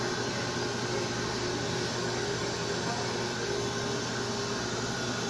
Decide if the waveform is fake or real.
real